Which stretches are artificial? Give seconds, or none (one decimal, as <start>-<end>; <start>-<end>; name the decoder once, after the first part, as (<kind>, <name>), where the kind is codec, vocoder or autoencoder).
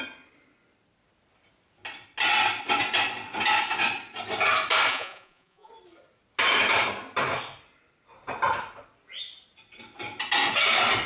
4.9-5.7 (vocoder, Vocos)